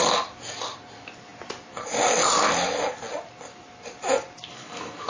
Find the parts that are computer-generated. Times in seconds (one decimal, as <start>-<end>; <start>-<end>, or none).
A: 4.5-5.1